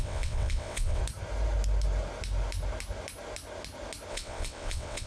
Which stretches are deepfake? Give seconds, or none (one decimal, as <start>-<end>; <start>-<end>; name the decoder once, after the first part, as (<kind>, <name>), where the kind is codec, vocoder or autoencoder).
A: 0.0-1.0 (vocoder, WaveNeXt); 4.1-5.1